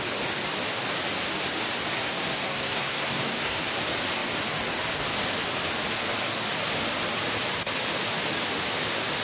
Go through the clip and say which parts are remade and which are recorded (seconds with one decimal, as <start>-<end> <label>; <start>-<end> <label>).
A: 0.0-1.9 recorded; 1.9-3.6 remade; 3.6-9.2 recorded